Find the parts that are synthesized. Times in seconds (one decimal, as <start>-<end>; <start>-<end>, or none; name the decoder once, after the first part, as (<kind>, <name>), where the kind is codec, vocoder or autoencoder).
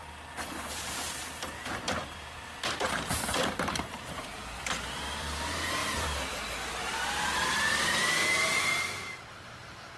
1.4-10.0 (vocoder, BigVGAN v2)